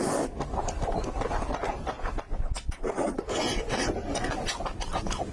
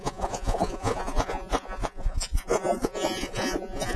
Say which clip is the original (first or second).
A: first